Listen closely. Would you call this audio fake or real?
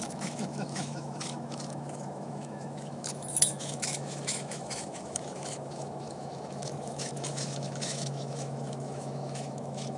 fake